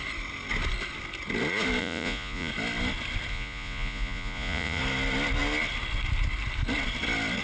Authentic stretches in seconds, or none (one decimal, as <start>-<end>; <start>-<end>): 0.0-1.8; 2.5-3.3; 4.8-7.4